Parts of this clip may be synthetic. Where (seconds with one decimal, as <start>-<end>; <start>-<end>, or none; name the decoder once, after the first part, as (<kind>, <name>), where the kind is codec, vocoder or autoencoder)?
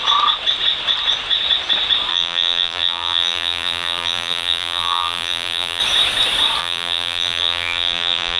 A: 2.1-5.8 (vocoder, BigVGAN v2); 6.6-8.4